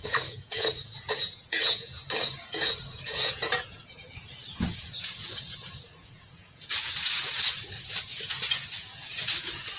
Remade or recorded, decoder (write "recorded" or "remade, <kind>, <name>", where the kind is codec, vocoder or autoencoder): remade, vocoder, Vocos